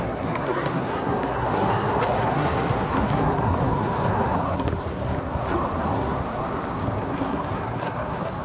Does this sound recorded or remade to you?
remade